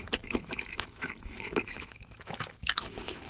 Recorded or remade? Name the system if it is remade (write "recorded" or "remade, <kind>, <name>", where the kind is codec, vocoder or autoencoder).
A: remade, autoencoder, DAC-VAE